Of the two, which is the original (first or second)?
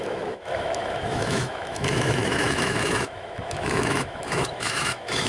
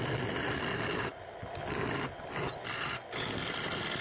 second